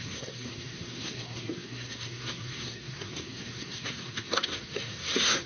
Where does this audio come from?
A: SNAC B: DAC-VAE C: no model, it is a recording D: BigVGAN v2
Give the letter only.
A